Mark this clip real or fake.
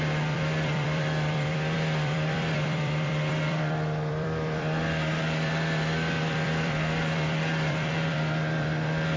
fake